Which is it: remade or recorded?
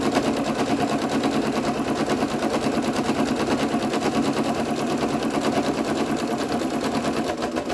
recorded